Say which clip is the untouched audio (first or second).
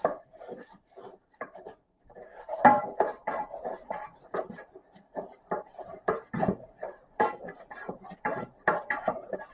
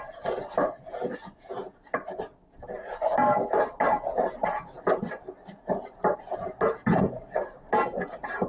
second